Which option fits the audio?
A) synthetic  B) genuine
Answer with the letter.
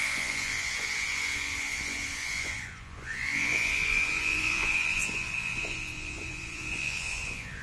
A